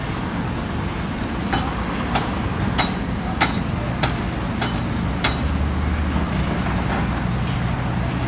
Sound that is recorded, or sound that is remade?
recorded